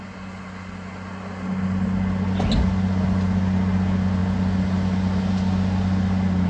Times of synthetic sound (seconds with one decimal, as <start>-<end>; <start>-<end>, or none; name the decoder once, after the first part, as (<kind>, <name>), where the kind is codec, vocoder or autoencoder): none